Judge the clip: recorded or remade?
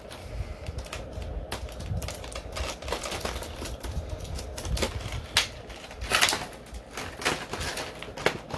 recorded